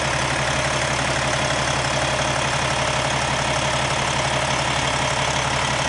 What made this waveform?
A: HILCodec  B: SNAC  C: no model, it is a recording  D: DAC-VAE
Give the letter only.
C